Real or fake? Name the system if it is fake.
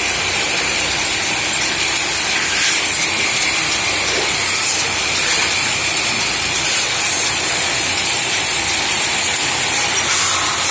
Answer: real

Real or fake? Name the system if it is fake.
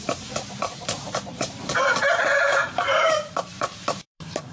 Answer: fake, vocoder, BigVGAN v2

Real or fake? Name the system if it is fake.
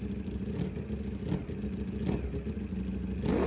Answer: real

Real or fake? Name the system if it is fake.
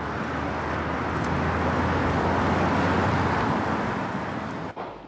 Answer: real